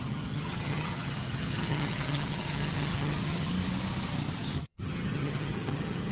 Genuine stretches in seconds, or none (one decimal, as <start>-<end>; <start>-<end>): 3.5-4.3